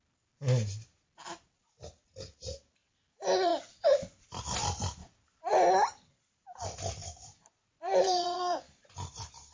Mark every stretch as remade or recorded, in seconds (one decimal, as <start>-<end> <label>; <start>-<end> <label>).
0.0-7.7 recorded; 7.7-8.6 remade; 8.6-9.5 recorded